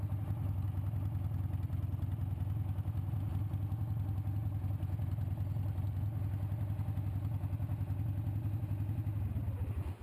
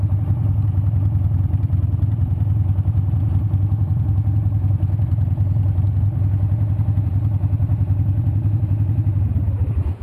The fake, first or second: second